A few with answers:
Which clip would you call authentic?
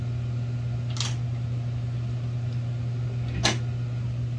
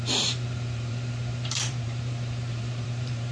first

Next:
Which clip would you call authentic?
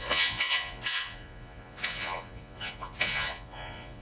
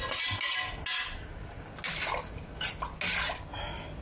second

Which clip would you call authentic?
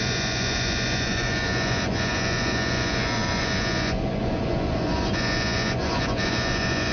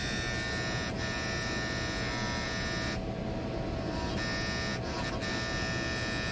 second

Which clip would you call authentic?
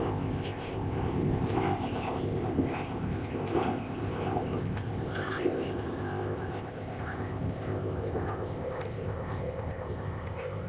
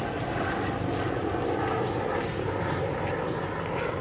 second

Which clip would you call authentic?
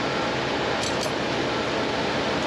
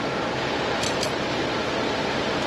first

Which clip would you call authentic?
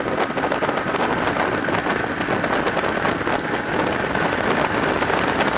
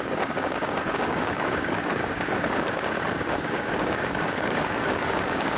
first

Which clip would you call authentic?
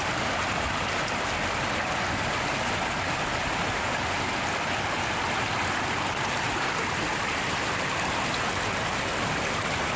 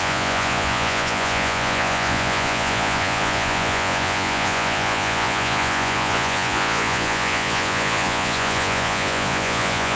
first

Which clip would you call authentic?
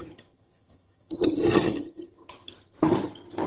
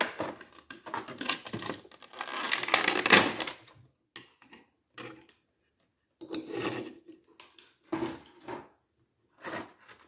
second